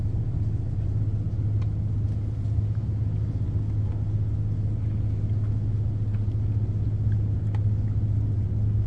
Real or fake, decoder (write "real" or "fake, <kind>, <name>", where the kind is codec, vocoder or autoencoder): real